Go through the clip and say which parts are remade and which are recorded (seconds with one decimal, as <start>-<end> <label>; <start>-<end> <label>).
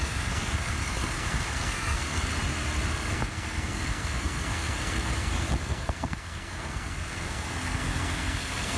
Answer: 0.0-2.3 remade; 2.3-2.9 recorded; 2.9-8.8 remade